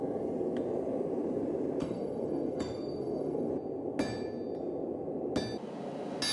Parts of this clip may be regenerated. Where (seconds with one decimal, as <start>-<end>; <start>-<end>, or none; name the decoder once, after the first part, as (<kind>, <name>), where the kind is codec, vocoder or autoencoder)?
1.8-3.5 (codec, SNAC)